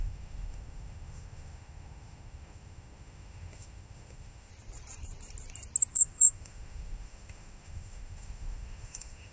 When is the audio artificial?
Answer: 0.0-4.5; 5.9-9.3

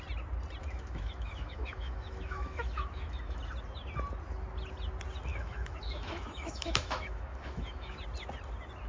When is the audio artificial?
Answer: 0.6-3.4; 5.3-8.0

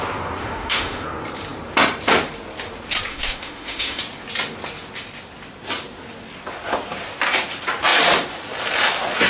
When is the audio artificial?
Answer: 0.4-1.0; 3.1-4.0

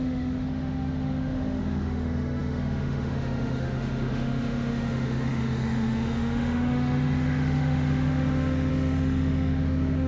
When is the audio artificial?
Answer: 0.0-10.1

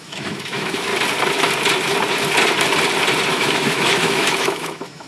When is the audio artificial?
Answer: 0.0-0.9; 3.3-5.1